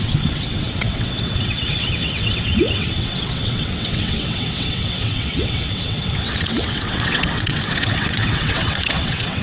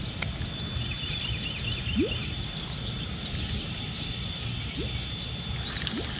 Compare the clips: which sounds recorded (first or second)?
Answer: second